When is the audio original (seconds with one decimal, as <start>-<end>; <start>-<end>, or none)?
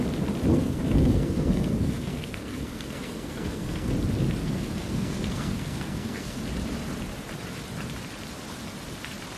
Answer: 0.0-0.5; 3.9-4.4; 6.4-9.4